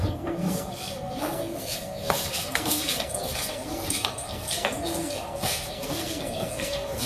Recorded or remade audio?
remade